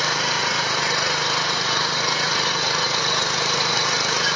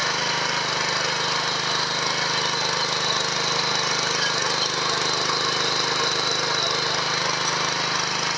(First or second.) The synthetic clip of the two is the first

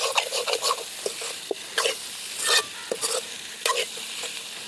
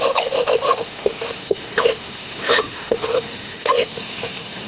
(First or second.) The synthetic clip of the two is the second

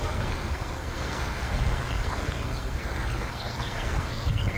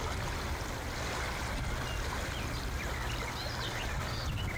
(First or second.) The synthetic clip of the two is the first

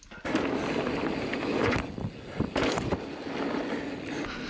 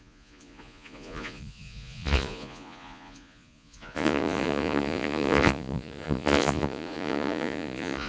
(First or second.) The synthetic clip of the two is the second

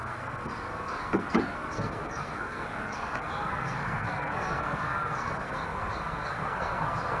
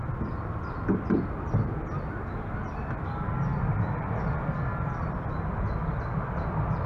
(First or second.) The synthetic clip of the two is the first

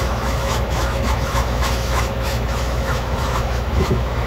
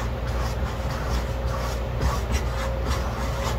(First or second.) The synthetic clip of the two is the first